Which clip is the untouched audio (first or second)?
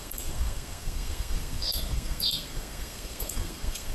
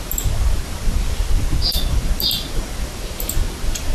second